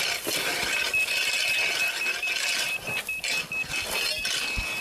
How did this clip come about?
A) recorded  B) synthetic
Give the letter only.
A